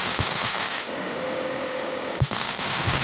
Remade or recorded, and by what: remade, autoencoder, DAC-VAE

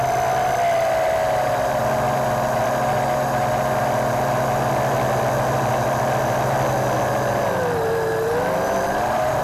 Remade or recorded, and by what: recorded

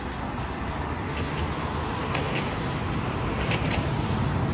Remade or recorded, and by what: recorded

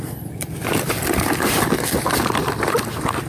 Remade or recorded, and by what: recorded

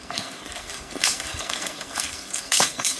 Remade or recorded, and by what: remade, codec, SNAC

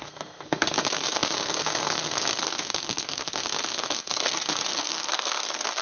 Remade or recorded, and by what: remade, codec, SNAC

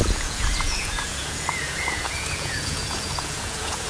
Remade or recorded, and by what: remade, vocoder, Vocos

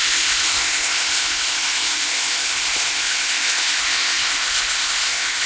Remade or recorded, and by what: remade, codec, ZipCodec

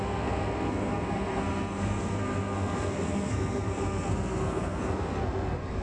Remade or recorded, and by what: remade, codec, SNAC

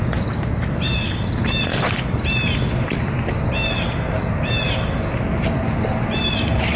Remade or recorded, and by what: recorded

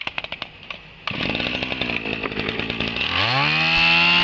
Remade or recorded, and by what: recorded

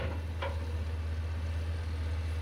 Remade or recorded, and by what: recorded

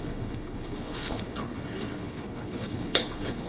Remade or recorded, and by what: remade, codec, HILCodec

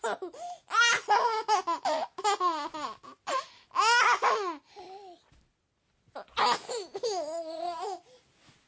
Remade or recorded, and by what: recorded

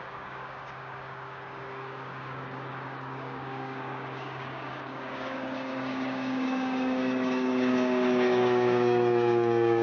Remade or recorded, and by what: remade, codec, DAC